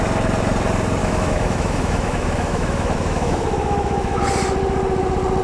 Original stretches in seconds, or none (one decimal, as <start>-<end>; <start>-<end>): 0.0-1.0; 4.2-5.4